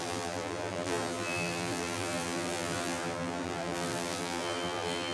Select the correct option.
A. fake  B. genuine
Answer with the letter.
A